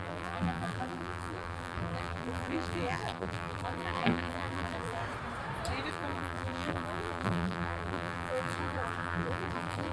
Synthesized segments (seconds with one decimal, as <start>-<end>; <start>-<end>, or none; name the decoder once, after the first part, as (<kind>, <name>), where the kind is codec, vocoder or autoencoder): 0.0-5.0 (vocoder, BigVGAN v2); 5.9-9.9